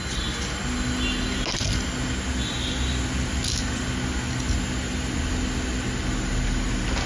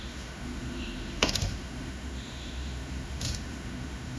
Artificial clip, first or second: second